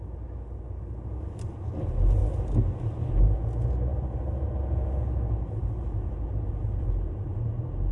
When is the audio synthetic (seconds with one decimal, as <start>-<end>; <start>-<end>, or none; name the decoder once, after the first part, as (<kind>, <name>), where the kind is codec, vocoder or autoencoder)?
3.9-4.5 (vocoder, BigVGAN v2); 5.6-7.3